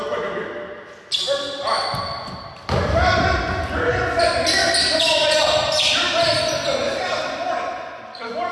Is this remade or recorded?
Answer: recorded